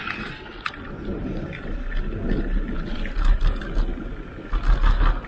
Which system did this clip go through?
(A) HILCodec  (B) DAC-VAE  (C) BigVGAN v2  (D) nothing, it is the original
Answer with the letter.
D